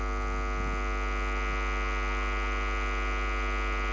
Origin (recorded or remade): recorded